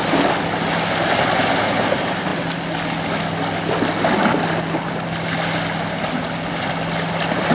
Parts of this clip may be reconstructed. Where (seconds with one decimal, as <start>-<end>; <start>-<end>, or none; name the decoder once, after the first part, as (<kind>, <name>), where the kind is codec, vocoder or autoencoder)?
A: none